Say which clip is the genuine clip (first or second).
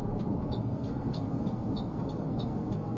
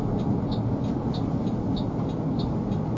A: second